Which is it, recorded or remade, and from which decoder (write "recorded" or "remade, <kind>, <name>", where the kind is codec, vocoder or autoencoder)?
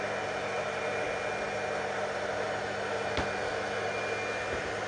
recorded